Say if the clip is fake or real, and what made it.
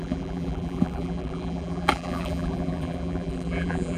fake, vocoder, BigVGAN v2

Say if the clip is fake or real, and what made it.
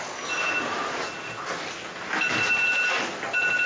real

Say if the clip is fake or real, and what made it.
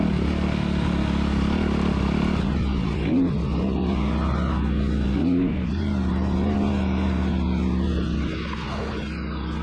real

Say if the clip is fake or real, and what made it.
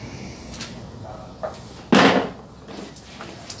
real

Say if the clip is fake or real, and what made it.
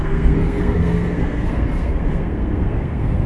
fake, codec, SNAC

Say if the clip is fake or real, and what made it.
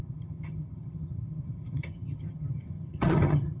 fake, vocoder, HiFi-GAN